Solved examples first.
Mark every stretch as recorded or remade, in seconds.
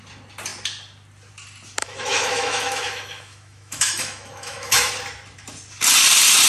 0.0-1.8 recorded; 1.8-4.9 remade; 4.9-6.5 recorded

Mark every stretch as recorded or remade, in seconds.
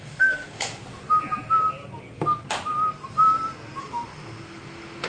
0.0-0.7 remade; 0.7-3.8 recorded; 3.8-5.1 remade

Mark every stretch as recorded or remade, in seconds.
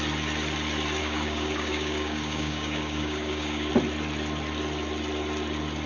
0.0-1.0 recorded; 1.0-3.7 remade; 3.7-5.9 recorded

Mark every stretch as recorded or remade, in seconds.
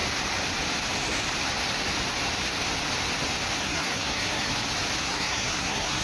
0.0-3.6 recorded; 3.6-4.5 remade; 4.5-5.0 recorded; 5.0-6.0 remade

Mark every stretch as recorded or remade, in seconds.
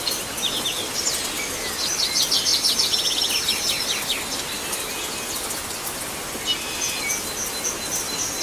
0.0-8.4 recorded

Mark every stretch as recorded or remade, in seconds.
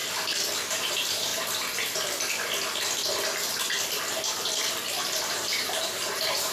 0.0-0.7 recorded; 0.7-1.3 remade; 1.3-5.2 recorded; 5.2-6.5 remade